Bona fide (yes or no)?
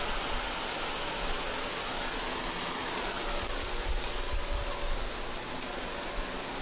yes